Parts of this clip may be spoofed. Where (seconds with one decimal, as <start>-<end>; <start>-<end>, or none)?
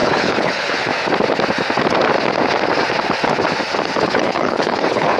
0.0-0.9; 4.0-5.2